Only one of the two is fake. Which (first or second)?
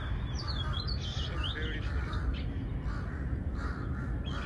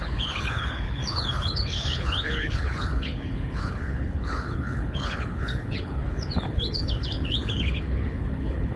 second